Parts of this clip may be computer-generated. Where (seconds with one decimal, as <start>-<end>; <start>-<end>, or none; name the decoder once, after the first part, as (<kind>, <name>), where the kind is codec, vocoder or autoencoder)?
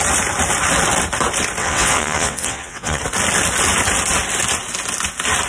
1.6-3.0 (vocoder, WaveNeXt)